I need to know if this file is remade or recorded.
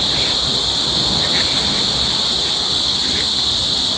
remade